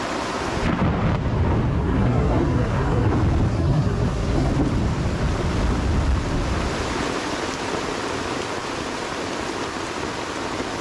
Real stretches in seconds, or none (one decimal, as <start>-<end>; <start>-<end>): 0.0-1.7; 3.1-3.5; 4.5-10.8